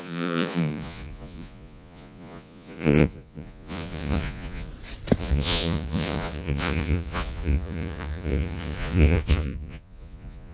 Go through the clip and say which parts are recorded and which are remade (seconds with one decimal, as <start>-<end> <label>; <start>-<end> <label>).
0.0-4.7 remade; 4.7-5.2 recorded; 5.2-10.5 remade